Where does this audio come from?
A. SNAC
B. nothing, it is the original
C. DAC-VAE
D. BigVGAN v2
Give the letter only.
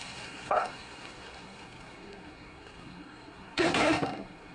A